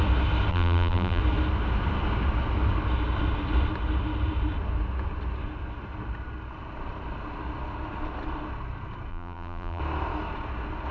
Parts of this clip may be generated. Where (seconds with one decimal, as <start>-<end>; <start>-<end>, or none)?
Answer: 0.5-1.2; 9.1-9.8